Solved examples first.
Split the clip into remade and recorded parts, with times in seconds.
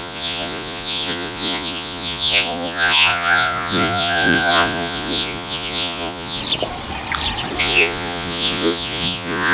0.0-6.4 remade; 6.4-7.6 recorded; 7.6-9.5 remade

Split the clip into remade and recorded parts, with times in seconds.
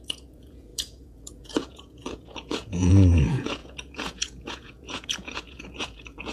0.0-6.3 remade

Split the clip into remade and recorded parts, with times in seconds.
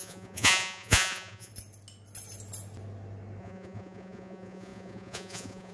0.0-1.5 remade; 1.5-3.4 recorded; 3.4-5.7 remade